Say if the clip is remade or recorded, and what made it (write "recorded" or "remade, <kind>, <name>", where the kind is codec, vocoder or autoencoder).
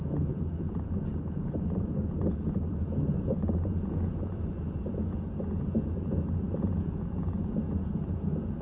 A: remade, vocoder, Vocos